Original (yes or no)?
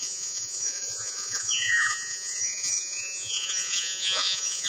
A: no